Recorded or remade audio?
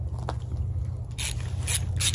recorded